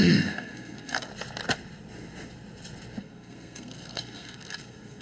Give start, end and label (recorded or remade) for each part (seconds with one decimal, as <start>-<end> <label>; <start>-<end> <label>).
0.0-1.1 remade; 1.1-3.0 recorded; 3.0-5.0 remade